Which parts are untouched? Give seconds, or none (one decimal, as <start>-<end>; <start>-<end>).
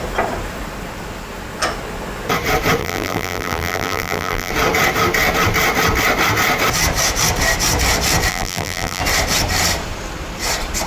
0.0-2.8; 4.5-8.3; 9.0-10.9